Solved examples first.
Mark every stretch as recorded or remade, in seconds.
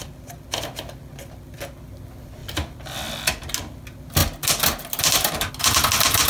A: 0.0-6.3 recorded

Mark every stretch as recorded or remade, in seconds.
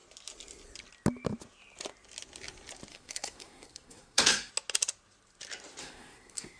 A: 0.0-2.9 recorded; 2.9-4.5 remade; 4.5-5.8 recorded; 5.8-6.6 remade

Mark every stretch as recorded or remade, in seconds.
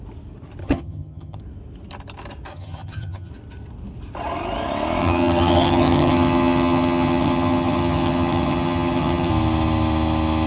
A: 0.0-0.6 recorded; 0.6-1.4 remade; 1.4-2.5 recorded; 2.5-3.3 remade; 3.3-5.0 recorded; 5.0-9.3 remade; 9.3-10.5 recorded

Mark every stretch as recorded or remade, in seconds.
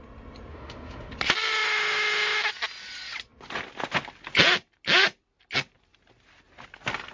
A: 0.0-0.5 recorded; 0.5-1.1 remade; 1.1-7.1 recorded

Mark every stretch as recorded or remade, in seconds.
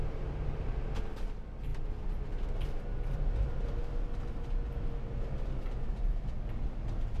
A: 0.0-7.2 recorded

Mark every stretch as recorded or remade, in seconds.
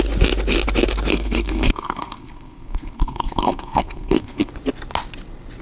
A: 0.0-1.1 recorded; 1.1-4.5 remade; 4.5-5.6 recorded